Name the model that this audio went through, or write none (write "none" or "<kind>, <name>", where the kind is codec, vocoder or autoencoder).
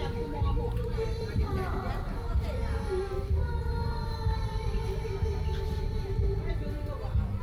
vocoder, BigVGAN v2